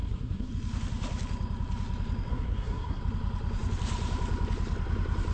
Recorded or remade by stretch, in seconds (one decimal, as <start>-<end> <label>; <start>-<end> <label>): 0.0-0.5 remade; 0.5-2.3 recorded; 2.3-3.0 remade; 3.0-5.3 recorded